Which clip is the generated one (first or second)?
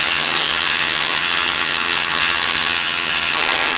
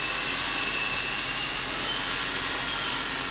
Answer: first